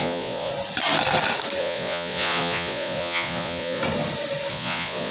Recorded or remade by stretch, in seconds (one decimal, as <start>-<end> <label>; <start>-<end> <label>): 0.0-0.5 remade; 0.5-1.6 recorded; 1.6-3.8 remade; 3.8-4.5 recorded; 4.5-5.1 remade